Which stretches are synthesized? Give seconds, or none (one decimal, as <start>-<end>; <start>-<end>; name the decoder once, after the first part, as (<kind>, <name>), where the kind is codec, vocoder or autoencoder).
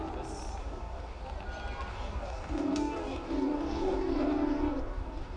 0.6-1.2 (codec, DAC); 1.9-5.4